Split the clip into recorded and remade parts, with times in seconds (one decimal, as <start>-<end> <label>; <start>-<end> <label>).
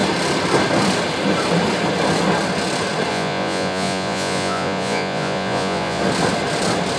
0.0-3.1 recorded; 3.1-6.0 remade; 6.0-7.0 recorded